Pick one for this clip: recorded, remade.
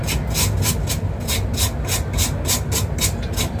recorded